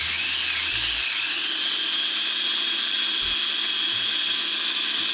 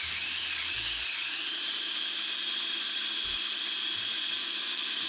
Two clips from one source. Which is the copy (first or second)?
second